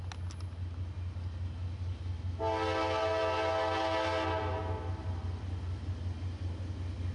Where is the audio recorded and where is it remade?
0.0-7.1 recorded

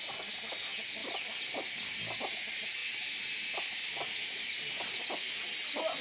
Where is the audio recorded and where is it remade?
0.0-1.0 recorded; 1.0-2.0 remade; 2.0-2.8 recorded; 2.8-5.0 remade; 5.0-6.0 recorded

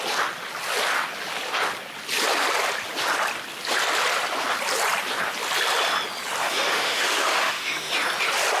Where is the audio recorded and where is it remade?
0.0-6.4 recorded; 6.4-7.9 remade; 7.9-8.6 recorded

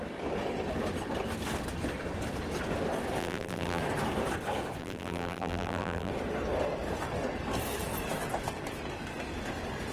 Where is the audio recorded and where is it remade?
0.0-3.2 recorded; 3.2-3.8 remade; 3.8-4.8 recorded; 4.8-6.1 remade; 6.1-9.9 recorded

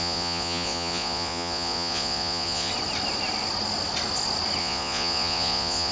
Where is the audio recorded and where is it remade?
0.0-2.7 remade; 2.7-4.6 recorded; 4.6-5.9 remade

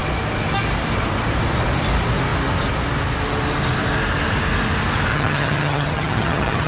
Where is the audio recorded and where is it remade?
0.0-5.1 recorded; 5.1-6.7 remade

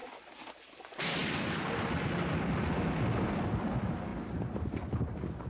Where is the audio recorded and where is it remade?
0.0-5.5 recorded

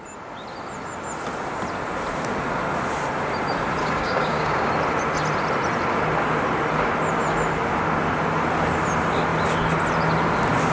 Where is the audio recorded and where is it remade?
0.0-3.8 recorded; 3.8-4.7 remade; 4.7-10.7 recorded